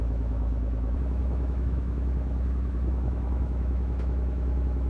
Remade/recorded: remade